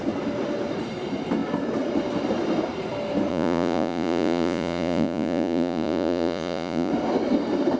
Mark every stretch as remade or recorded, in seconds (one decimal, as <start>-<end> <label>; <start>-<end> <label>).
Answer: 0.0-3.3 recorded; 3.3-6.9 remade; 6.9-7.8 recorded